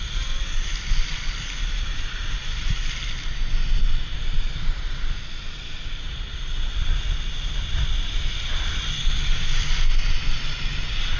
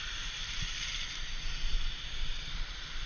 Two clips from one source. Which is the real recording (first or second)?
first